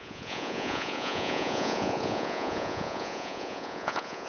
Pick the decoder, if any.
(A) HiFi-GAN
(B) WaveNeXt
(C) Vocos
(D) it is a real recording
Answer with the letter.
C